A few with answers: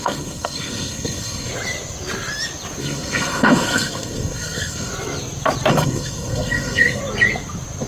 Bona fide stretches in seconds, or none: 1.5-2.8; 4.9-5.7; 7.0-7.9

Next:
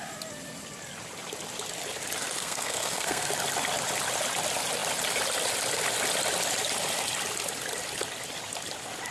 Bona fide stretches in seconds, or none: 0.0-2.4; 3.3-9.1